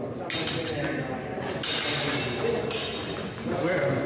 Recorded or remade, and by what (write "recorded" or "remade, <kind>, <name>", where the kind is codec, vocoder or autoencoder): recorded